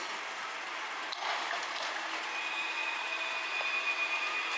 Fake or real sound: real